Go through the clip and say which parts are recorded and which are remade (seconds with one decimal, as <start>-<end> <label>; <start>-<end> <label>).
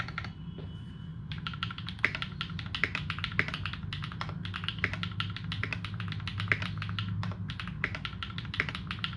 0.0-1.1 recorded; 1.1-2.0 remade; 2.0-9.2 recorded